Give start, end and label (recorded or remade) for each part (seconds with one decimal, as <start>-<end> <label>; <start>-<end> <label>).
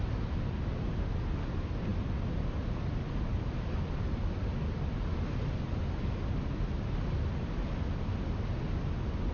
0.0-9.3 recorded